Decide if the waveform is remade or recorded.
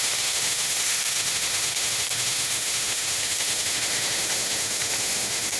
remade